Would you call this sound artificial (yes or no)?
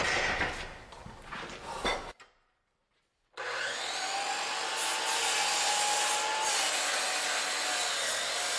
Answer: no